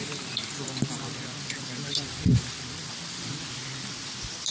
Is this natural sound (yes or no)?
yes